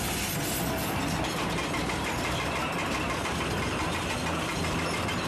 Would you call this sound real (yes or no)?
yes